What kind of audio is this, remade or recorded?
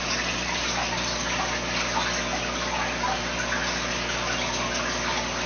recorded